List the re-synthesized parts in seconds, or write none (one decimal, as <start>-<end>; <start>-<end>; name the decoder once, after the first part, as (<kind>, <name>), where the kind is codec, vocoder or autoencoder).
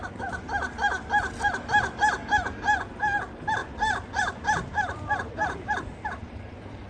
none